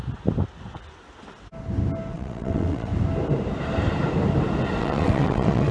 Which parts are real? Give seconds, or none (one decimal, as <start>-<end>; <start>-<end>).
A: 0.0-2.1; 2.9-4.8